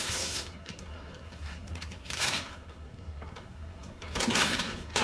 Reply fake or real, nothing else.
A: fake